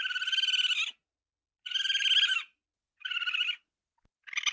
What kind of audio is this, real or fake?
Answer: real